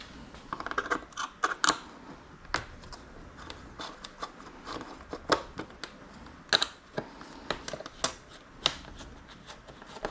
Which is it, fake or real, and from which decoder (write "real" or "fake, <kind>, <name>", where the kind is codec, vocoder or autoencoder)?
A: real